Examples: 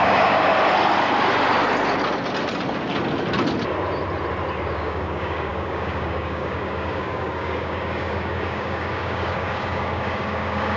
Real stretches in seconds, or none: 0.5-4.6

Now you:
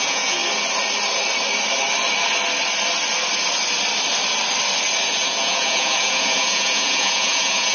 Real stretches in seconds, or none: 0.4-5.0

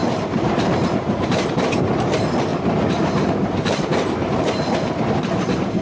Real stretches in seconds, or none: none

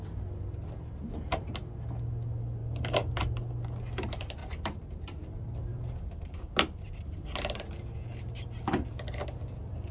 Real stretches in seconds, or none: 0.0-2.6; 3.2-4.4; 5.0-5.7; 6.3-9.9

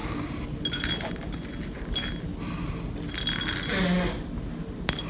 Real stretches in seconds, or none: 0.0-5.1

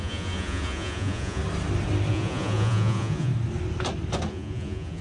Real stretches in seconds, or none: 1.4-2.1; 3.3-4.3